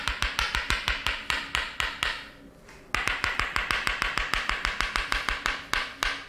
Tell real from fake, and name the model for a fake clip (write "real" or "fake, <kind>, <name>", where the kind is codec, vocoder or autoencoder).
real